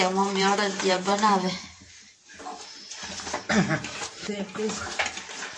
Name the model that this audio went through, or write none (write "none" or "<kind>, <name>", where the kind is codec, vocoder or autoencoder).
vocoder, BigVGAN v2